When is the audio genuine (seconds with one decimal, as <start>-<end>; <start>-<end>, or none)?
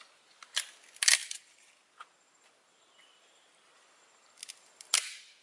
0.0-5.4